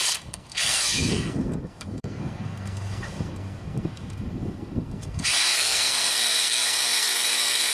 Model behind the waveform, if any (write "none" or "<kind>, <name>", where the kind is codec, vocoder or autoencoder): codec, SNAC